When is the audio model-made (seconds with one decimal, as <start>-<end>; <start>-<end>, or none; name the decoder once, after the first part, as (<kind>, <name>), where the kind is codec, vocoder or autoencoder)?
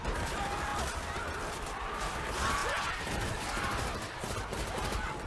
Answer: none